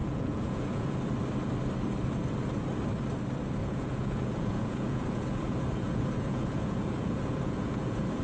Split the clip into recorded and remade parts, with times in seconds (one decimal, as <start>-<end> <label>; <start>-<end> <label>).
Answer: 0.0-1.0 remade; 1.0-3.6 recorded; 3.6-8.2 remade